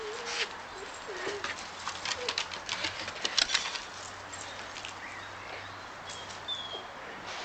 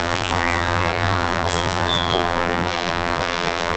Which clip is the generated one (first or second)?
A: second